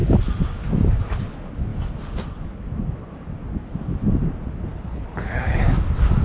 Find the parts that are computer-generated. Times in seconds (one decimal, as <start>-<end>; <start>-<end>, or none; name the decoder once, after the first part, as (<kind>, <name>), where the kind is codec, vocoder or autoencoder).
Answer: 4.7-5.6 (codec, HILCodec)